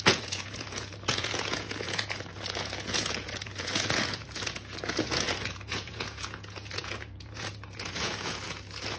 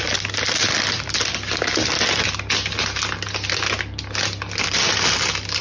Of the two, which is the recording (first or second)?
second